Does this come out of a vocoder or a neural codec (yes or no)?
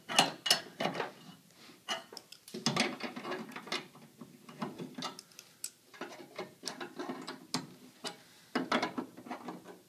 no